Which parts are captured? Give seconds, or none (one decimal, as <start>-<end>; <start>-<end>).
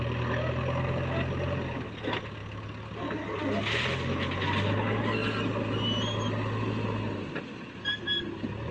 0.0-8.7